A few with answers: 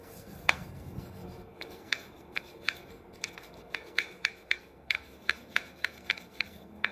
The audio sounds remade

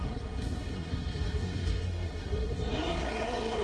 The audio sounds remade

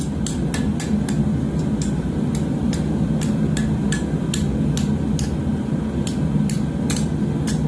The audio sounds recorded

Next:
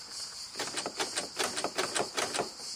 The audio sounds recorded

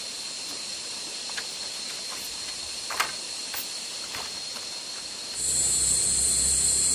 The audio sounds remade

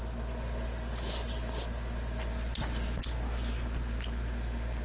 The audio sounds recorded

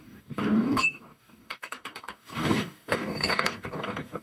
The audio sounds remade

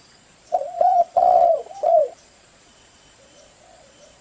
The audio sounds remade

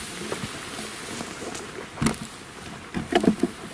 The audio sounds recorded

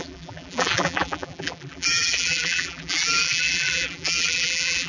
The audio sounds remade